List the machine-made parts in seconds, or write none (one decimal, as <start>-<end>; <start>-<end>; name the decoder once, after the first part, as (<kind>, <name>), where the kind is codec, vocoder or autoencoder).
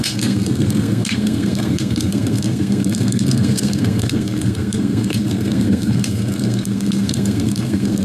0.0-8.0 (codec, SNAC)